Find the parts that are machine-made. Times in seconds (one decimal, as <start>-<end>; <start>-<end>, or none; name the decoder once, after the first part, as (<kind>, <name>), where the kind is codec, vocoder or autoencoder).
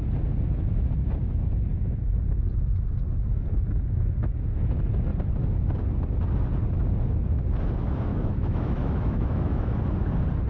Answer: 8.1-9.8 (autoencoder, DAC-VAE)